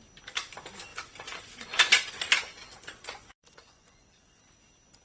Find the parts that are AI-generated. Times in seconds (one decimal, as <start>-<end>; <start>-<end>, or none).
0.9-2.1; 2.5-4.4